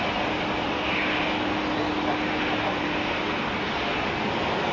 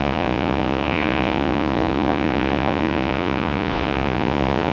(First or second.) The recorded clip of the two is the first